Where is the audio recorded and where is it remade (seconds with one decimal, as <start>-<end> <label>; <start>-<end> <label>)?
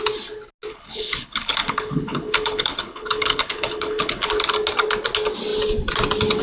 0.0-0.7 recorded; 0.7-4.3 remade; 4.3-6.4 recorded